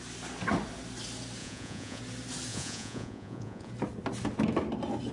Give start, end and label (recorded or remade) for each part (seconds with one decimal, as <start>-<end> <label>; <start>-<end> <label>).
0.0-1.4 recorded; 1.4-2.0 remade; 2.0-2.5 recorded; 2.5-3.7 remade; 3.7-5.1 recorded